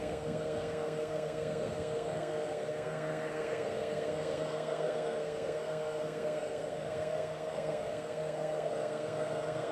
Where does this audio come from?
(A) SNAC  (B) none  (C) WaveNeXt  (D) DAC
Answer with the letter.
A